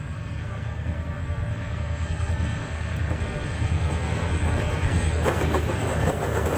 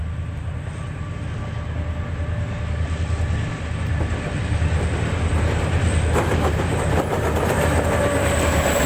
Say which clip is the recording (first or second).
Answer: second